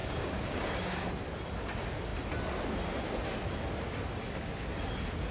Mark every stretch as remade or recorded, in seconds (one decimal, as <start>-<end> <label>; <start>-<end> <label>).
0.0-1.1 remade; 1.1-5.3 recorded